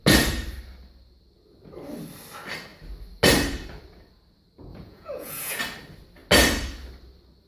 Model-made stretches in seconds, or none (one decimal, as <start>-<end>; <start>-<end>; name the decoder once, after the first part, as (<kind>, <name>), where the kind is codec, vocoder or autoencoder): 4.7-5.6 (vocoder, Vocos)